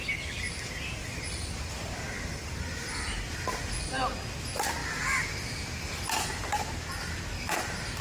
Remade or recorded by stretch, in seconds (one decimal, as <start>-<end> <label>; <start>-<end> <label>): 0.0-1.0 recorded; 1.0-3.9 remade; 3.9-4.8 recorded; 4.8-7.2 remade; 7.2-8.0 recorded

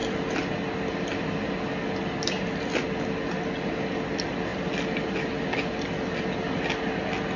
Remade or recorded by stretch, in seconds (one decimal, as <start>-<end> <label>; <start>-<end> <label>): 0.0-7.4 recorded

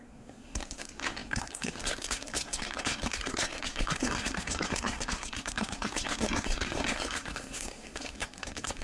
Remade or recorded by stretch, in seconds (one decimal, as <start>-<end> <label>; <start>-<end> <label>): 0.0-8.8 remade

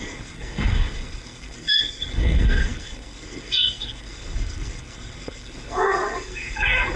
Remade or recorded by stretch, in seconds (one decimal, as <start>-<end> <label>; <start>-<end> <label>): 0.0-7.0 remade